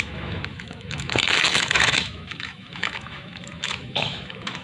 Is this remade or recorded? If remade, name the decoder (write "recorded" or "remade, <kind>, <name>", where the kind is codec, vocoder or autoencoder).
remade, autoencoder, DAC-VAE